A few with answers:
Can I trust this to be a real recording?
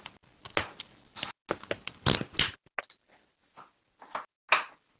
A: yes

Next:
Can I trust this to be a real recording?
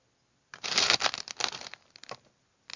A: yes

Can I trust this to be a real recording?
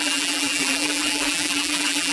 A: no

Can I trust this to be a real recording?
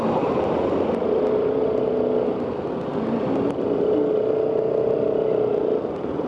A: yes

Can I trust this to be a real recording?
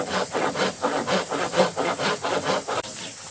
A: yes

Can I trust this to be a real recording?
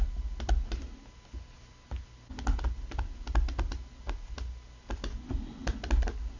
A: yes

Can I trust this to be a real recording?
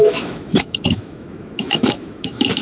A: no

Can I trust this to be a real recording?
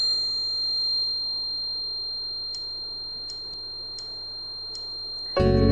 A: yes